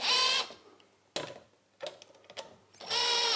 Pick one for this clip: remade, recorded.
recorded